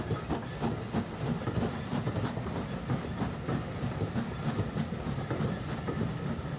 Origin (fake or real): real